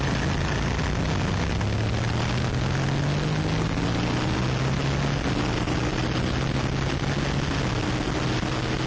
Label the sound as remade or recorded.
recorded